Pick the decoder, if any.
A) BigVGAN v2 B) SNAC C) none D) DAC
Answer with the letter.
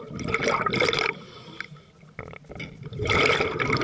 C